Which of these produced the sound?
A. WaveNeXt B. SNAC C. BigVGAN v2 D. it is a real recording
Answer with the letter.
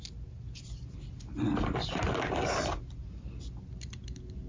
D